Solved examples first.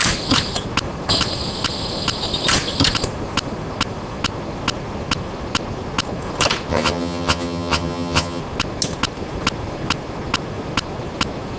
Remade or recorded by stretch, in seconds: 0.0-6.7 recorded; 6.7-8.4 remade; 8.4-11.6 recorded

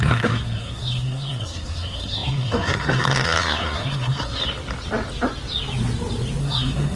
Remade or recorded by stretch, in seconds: 0.0-4.4 remade; 4.4-6.4 recorded; 6.4-7.0 remade